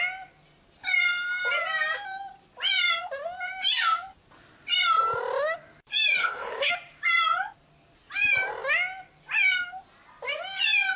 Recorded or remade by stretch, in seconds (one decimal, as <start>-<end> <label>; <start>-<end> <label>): 0.0-6.2 recorded; 6.2-6.7 remade; 6.7-11.0 recorded